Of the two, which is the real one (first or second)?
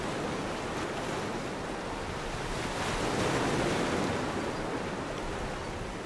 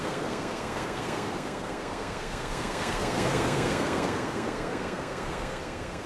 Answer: first